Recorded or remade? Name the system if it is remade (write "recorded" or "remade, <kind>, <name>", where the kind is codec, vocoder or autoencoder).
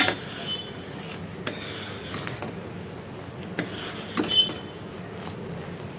recorded